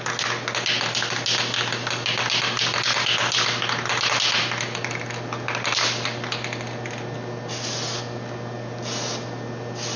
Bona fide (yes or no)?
yes